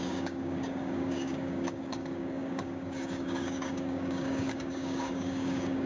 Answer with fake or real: fake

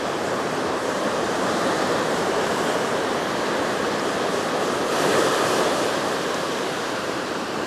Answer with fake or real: fake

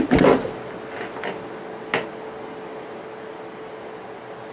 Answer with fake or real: real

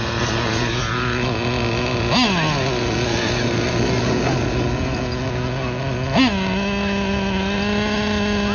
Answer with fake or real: real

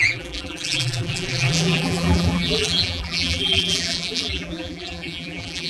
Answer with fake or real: fake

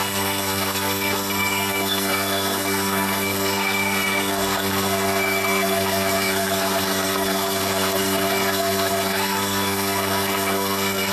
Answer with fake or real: fake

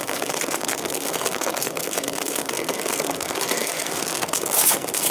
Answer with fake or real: fake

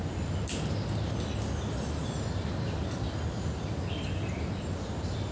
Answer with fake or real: real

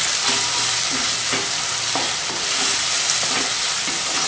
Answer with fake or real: real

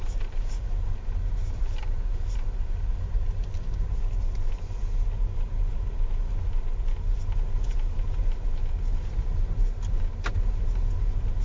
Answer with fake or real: real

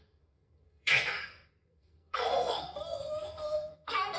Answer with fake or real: fake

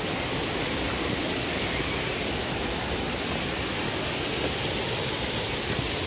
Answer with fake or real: real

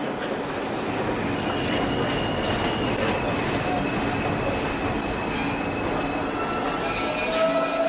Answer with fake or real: real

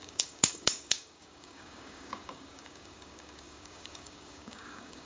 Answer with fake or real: fake